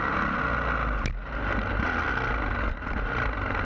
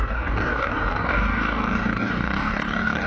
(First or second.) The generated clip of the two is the second